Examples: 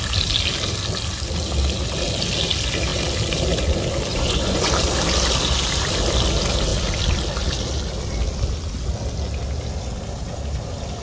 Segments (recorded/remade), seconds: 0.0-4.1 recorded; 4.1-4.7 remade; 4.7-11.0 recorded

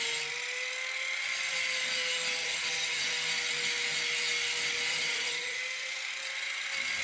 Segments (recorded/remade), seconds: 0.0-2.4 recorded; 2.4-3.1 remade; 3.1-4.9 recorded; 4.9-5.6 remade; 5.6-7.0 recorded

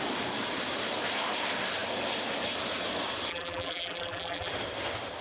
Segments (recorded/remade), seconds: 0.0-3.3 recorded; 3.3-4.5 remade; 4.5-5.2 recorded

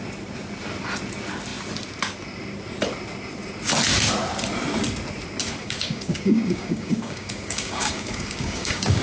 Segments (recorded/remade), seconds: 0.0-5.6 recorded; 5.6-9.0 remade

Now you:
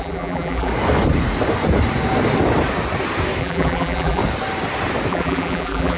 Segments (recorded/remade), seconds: 0.0-0.7 remade; 0.7-3.4 recorded; 3.4-4.2 remade; 4.2-5.1 recorded; 5.1-6.0 remade

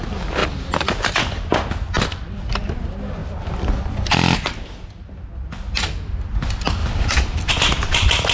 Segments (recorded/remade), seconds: 0.0-0.4 recorded; 0.4-2.3 remade; 2.3-3.2 recorded; 3.2-3.9 remade; 3.9-6.8 recorded; 6.8-7.5 remade; 7.5-8.3 recorded

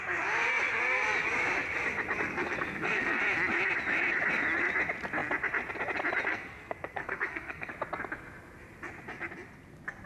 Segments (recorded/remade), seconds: 0.0-2.3 recorded; 2.3-3.2 remade; 3.2-6.3 recorded; 6.3-7.7 remade; 7.7-10.1 recorded

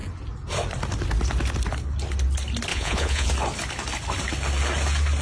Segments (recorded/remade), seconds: 0.0-2.7 recorded; 2.7-3.3 remade; 3.3-5.2 recorded